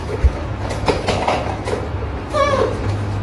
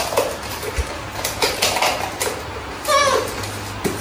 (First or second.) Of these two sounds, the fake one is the first